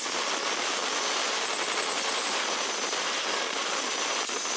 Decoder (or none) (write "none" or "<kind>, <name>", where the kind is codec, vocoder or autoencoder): none